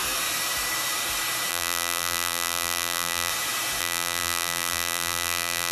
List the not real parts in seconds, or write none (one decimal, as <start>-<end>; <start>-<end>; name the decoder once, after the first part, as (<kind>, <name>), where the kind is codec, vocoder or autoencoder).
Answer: 1.5-3.3 (vocoder, BigVGAN v2); 3.8-5.7